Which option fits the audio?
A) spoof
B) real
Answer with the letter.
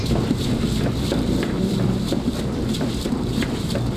A